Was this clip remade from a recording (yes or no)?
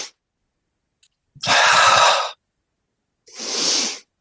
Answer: no